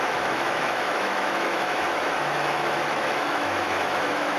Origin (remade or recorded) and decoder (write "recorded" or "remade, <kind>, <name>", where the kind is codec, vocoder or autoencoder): remade, autoencoder, DAC-VAE